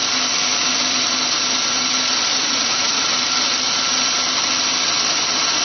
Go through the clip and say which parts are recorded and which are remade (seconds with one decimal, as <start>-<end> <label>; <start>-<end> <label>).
0.0-2.3 recorded; 2.3-3.0 remade; 3.0-5.6 recorded

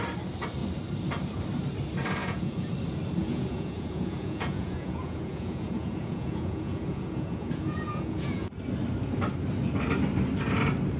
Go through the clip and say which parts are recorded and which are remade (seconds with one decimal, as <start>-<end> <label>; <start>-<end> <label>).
0.0-2.2 recorded; 2.2-2.7 remade; 2.7-3.2 recorded; 3.2-8.5 remade; 8.5-11.0 recorded